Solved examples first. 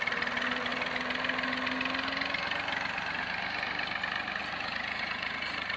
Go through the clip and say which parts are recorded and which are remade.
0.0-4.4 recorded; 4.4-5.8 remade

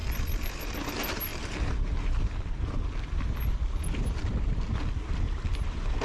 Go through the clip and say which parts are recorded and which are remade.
0.0-6.0 recorded

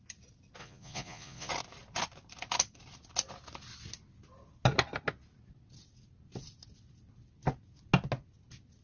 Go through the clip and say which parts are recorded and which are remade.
0.0-0.6 recorded; 0.6-1.5 remade; 1.5-8.8 recorded

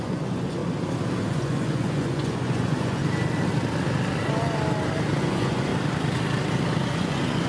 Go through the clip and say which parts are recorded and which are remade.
0.0-0.6 remade; 0.6-1.2 recorded; 1.2-3.0 remade; 3.0-5.2 recorded; 5.2-5.7 remade; 5.7-6.9 recorded; 6.9-7.5 remade

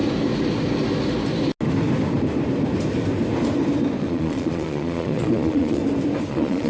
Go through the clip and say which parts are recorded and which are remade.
0.0-4.0 recorded; 4.0-5.8 remade; 5.8-6.3 recorded; 6.3-6.7 remade

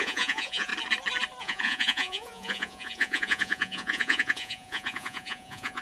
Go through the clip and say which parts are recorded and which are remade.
0.0-0.7 remade; 0.7-1.4 recorded; 1.4-5.8 remade